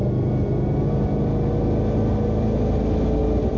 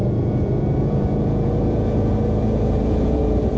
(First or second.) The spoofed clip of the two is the second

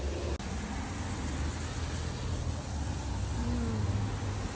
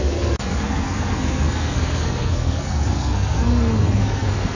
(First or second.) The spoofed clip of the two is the second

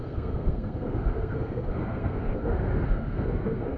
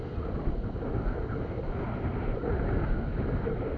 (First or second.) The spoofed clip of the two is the first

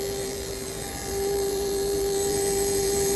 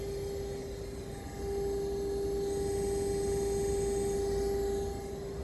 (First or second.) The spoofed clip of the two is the first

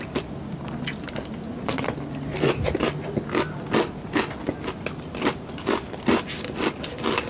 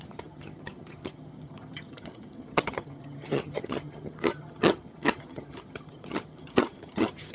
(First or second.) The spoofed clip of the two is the second